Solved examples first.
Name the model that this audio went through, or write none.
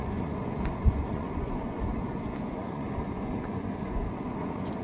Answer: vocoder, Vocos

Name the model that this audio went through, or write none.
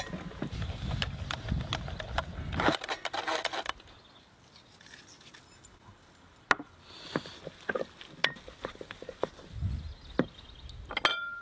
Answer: none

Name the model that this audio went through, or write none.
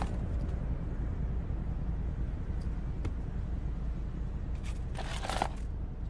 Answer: none